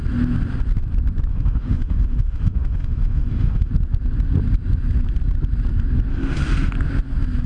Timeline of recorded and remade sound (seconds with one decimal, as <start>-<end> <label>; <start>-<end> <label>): 0.0-1.3 recorded; 1.3-3.7 remade; 3.7-6.1 recorded; 6.1-6.7 remade; 6.7-7.5 recorded